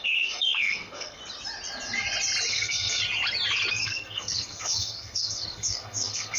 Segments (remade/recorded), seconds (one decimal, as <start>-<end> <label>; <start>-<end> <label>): 0.0-1.2 remade; 1.2-2.5 recorded; 2.5-3.0 remade; 3.0-3.7 recorded; 3.7-6.4 remade